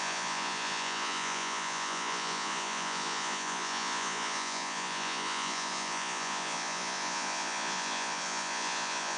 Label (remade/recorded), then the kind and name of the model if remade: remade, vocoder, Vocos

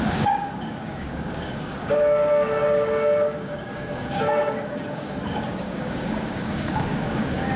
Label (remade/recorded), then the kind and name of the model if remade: remade, codec, DAC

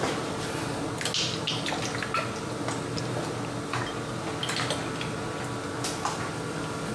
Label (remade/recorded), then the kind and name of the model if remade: recorded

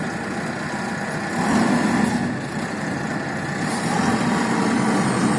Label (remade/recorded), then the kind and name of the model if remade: recorded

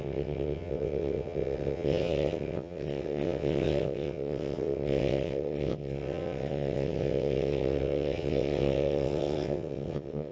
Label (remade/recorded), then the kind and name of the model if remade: remade, vocoder, WaveNeXt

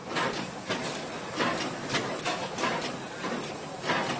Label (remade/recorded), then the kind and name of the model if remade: recorded